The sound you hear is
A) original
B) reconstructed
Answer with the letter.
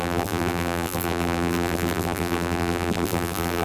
B